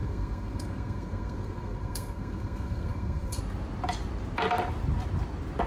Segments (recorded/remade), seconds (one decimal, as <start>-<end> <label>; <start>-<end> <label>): 0.0-3.4 remade; 3.4-5.7 recorded